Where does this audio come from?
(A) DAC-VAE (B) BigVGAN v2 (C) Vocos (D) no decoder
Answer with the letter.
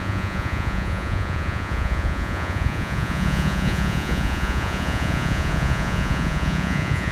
C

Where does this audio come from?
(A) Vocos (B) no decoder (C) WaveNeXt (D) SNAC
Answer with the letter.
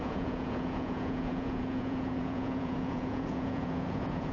A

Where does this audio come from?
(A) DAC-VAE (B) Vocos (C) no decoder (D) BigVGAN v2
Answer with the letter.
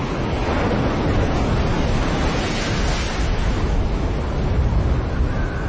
C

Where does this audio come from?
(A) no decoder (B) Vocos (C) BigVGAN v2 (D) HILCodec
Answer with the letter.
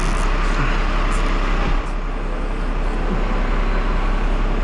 A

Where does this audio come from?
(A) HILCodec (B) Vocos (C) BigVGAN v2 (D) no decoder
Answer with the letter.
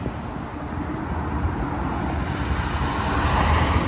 D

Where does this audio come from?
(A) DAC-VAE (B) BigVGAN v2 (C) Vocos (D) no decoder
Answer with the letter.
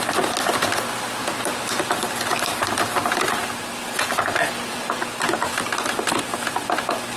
D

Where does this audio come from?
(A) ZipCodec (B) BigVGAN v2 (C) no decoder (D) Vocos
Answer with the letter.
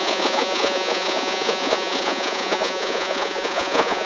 D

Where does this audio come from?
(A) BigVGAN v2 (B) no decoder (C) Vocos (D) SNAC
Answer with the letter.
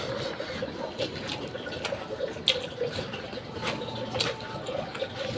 B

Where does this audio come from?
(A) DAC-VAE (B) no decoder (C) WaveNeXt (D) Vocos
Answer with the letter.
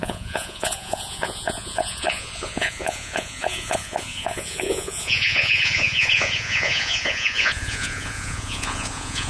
D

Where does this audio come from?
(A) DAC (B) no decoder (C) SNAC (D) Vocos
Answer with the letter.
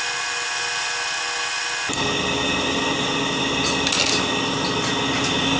B